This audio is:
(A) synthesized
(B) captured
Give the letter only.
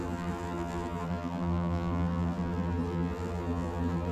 A